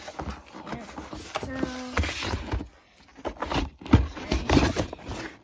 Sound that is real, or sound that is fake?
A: real